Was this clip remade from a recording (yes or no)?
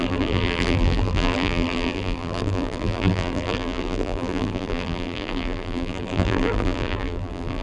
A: yes